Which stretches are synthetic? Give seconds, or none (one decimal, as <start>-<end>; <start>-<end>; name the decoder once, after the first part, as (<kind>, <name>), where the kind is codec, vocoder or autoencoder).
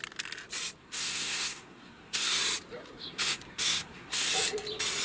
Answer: 0.8-2.4 (codec, SNAC); 2.8-4.3